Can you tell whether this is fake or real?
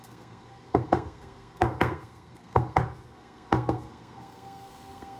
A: fake